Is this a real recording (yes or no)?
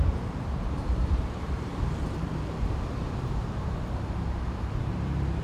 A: no